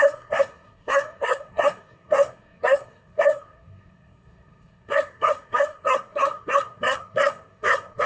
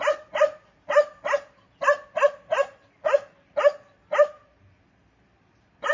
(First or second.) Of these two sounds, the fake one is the first